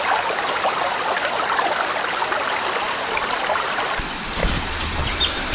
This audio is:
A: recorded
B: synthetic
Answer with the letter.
A